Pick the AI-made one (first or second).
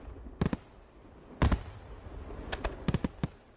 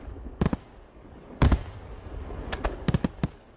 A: second